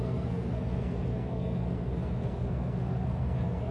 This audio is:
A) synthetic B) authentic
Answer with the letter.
A